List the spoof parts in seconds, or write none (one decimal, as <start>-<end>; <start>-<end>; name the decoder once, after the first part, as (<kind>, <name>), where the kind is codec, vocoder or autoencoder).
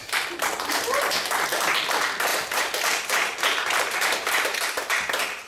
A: 0.0-0.7 (vocoder, BigVGAN v2); 2.3-5.5